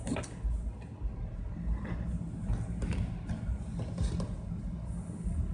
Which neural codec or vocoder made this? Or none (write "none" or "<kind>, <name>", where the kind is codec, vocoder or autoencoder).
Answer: none